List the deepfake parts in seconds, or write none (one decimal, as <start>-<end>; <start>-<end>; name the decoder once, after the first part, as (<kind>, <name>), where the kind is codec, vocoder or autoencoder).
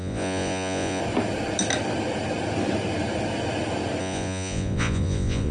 0.0-1.0 (vocoder, Vocos); 4.0-5.5